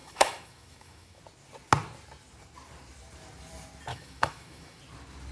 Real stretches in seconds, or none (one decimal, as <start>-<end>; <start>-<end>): 1.2-3.9; 4.8-5.3